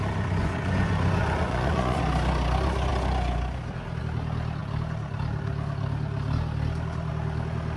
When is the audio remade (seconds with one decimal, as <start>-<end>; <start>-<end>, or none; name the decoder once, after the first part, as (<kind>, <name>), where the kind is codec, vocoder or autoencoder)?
0.4-2.0 (vocoder, Vocos)